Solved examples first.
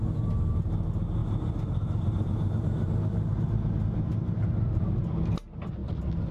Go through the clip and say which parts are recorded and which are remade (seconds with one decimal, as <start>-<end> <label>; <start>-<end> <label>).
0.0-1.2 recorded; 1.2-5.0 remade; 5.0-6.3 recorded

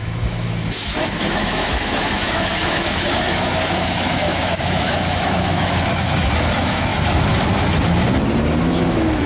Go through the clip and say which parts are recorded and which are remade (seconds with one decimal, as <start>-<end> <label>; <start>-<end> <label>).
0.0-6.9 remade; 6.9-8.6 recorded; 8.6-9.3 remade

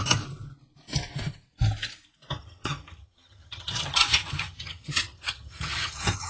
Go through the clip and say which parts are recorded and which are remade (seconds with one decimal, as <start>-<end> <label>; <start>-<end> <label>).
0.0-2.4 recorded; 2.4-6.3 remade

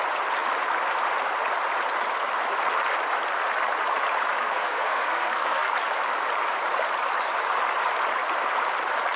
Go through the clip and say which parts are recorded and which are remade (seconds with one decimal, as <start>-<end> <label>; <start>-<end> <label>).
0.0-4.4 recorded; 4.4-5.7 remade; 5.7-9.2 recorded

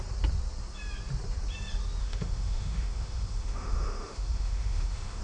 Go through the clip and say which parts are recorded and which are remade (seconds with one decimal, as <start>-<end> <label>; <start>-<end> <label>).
0.0-2.0 recorded; 2.0-5.2 remade

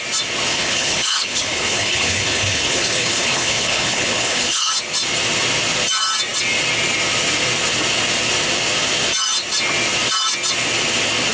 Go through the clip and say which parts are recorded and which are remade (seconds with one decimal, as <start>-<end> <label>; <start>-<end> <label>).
0.0-0.5 recorded; 0.5-4.7 remade; 4.7-11.3 recorded

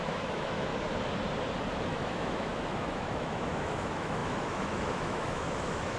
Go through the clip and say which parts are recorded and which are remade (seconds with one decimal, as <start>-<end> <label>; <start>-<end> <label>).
0.0-0.7 remade; 0.7-1.8 recorded; 1.8-6.0 remade